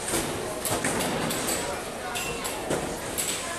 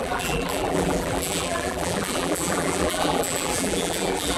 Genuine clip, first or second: first